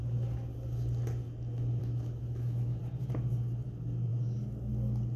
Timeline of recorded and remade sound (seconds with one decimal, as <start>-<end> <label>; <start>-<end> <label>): 0.0-1.8 recorded; 1.8-2.8 remade; 2.8-5.2 recorded